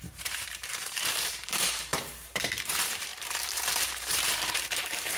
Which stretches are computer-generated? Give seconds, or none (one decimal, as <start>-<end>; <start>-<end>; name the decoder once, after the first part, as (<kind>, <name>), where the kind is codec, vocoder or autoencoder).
0.0-3.1 (vocoder, BigVGAN v2); 3.8-5.2